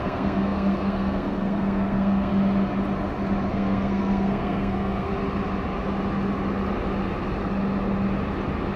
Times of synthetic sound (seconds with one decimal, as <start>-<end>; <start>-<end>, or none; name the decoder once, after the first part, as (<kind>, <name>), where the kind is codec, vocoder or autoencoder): 0.0-2.3 (codec, SNAC); 3.5-5.1